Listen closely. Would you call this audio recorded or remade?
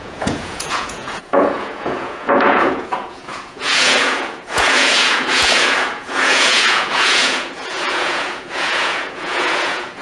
remade